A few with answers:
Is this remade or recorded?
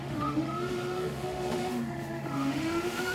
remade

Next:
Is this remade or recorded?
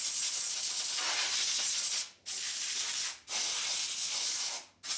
recorded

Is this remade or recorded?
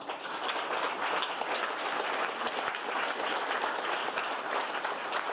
recorded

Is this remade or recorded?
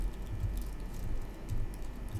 recorded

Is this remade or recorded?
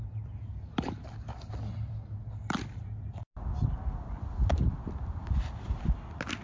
recorded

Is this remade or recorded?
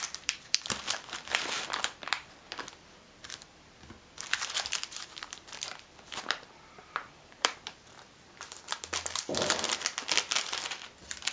remade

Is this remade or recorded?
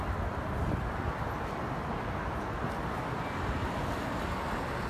recorded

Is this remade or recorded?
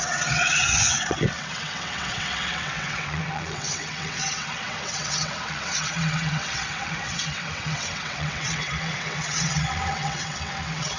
remade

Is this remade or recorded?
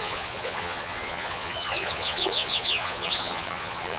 remade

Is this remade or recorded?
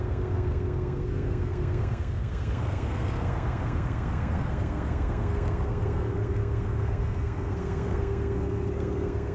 remade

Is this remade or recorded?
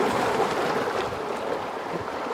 recorded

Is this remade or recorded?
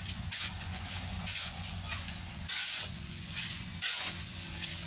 remade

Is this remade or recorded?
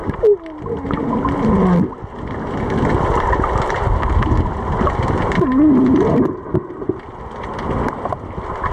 recorded